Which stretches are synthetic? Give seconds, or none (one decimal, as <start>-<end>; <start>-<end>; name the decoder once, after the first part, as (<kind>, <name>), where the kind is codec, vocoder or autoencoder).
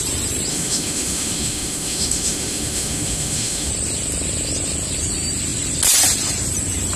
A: 0.5-3.7 (autoencoder, DAC-VAE)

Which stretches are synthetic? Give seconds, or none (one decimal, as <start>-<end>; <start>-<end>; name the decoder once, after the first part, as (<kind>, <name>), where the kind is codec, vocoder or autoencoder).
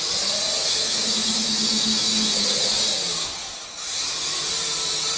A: 0.6-2.7 (autoencoder, DAC-VAE)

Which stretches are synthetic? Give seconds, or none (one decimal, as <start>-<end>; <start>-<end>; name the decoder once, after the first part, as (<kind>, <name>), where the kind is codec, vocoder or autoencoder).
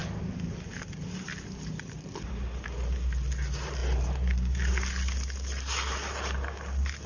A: none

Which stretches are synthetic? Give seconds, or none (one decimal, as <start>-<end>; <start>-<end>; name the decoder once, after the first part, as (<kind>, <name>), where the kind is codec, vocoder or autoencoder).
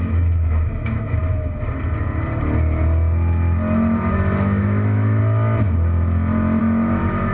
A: 0.0-1.2 (autoencoder, DAC-VAE); 4.1-5.2; 6.6-7.3